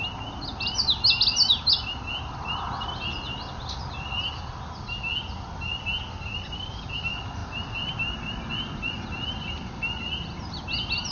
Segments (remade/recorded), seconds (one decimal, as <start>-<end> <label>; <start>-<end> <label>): 0.0-11.1 recorded